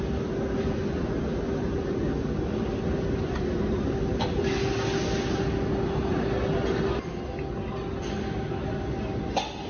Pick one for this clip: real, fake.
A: real